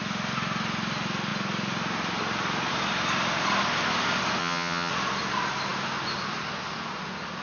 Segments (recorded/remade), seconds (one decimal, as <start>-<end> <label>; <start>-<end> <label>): 0.0-4.4 recorded; 4.4-4.9 remade; 4.9-7.4 recorded